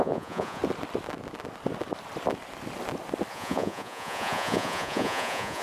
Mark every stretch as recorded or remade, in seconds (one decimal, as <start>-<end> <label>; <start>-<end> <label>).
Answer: 0.0-0.6 remade; 0.6-3.3 recorded; 3.3-5.6 remade